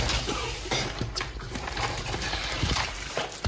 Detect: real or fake fake